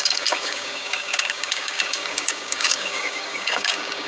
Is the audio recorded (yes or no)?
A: no